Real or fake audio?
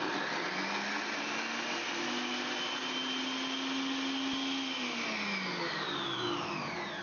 real